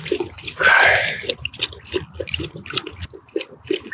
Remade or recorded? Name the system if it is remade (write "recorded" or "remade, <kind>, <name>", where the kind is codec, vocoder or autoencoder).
recorded